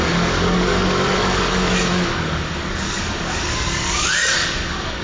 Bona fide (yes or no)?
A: no